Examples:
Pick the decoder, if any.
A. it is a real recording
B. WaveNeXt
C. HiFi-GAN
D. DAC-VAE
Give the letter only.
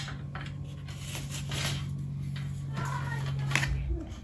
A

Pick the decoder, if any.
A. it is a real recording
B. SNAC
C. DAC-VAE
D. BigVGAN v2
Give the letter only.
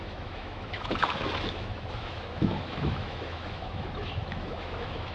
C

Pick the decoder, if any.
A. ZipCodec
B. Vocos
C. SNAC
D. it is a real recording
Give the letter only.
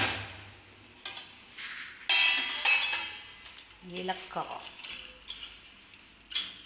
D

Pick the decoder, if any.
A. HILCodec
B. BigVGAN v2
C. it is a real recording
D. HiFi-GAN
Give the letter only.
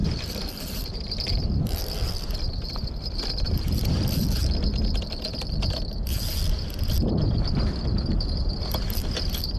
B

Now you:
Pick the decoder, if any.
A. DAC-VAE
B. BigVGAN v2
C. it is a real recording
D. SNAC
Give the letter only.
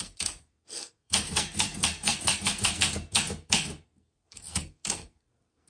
D